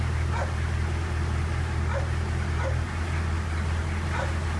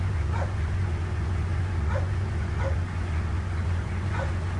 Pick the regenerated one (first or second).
second